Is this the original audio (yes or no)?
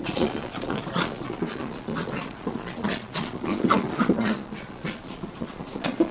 no